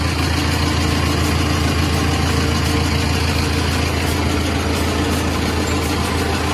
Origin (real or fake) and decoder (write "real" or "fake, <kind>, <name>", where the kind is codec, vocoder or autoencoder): real